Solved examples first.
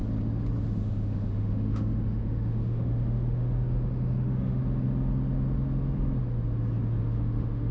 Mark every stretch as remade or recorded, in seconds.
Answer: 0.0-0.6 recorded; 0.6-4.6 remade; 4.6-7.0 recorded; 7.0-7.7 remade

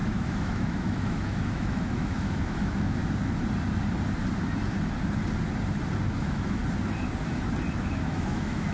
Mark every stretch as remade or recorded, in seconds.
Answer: 0.0-3.0 remade; 3.0-6.1 recorded; 6.1-6.6 remade; 6.6-7.8 recorded; 7.8-8.7 remade

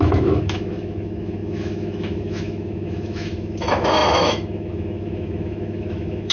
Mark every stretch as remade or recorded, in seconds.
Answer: 0.0-6.3 remade